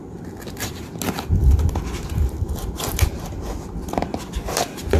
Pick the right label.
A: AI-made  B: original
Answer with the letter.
A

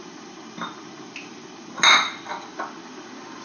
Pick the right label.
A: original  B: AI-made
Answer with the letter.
A